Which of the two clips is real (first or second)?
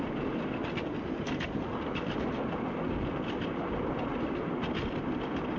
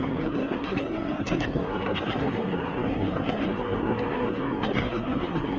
first